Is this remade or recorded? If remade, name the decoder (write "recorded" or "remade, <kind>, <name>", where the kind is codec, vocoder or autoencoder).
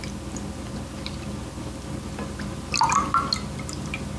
recorded